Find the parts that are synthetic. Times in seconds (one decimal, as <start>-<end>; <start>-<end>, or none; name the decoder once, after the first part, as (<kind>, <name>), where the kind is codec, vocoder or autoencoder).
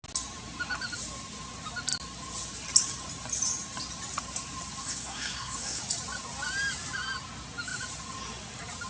4.8-5.8 (codec, SNAC)